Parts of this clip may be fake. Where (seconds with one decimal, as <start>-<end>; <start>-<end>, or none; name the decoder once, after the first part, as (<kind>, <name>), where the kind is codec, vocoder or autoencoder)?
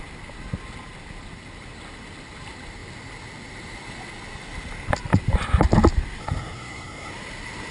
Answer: 6.2-7.1 (codec, SNAC)